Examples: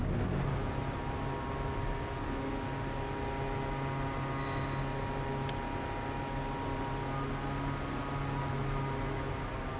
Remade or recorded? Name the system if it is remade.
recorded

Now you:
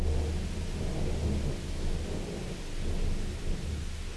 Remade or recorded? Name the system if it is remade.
recorded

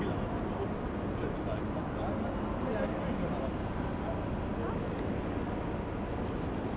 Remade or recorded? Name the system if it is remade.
recorded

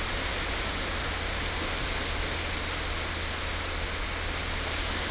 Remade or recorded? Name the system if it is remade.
recorded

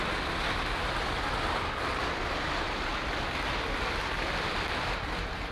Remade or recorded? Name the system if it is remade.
recorded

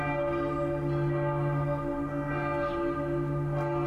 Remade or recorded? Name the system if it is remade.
recorded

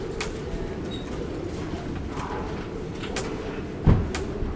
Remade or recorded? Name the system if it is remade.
recorded